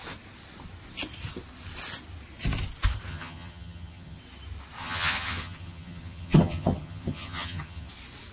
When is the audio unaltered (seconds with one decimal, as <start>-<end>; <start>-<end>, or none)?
0.0-3.1; 4.2-4.8; 7.9-8.3